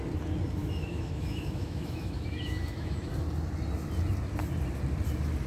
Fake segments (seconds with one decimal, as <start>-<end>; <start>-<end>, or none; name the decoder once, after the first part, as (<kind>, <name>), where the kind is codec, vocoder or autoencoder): 0.6-3.1 (autoencoder, DAC-VAE)